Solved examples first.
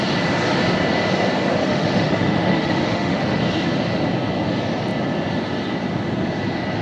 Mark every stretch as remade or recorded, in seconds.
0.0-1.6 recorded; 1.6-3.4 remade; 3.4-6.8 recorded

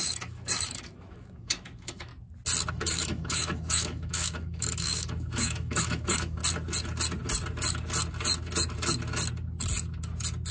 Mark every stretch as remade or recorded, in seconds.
0.0-2.1 remade; 2.1-2.7 recorded; 2.7-6.4 remade; 6.4-10.5 recorded

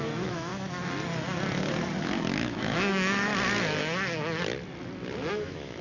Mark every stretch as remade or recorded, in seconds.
0.0-0.5 remade; 0.5-2.0 recorded; 2.0-3.3 remade; 3.3-5.3 recorded; 5.3-5.8 remade

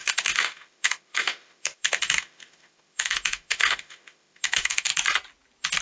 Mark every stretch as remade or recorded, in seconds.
0.0-4.9 remade; 4.9-5.8 recorded

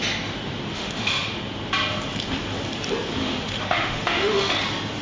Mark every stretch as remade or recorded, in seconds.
0.0-0.7 recorded; 0.7-1.4 remade; 1.4-3.2 recorded; 3.2-4.5 remade; 4.5-5.0 recorded